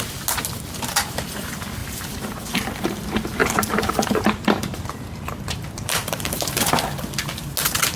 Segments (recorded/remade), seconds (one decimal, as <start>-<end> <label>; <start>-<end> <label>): 0.0-1.8 recorded; 1.8-3.0 remade; 3.0-3.4 recorded; 3.4-6.7 remade; 6.7-8.0 recorded

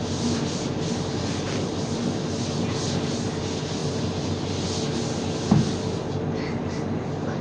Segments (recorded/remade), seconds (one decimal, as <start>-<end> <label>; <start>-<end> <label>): 0.0-7.4 recorded

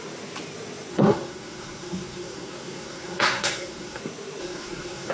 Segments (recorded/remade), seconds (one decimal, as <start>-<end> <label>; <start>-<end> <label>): 0.0-0.9 recorded; 0.9-4.0 remade; 4.0-4.4 recorded; 4.4-5.1 remade